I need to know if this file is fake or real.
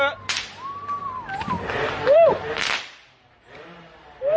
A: real